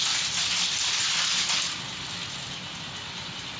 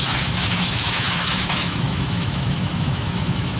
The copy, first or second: second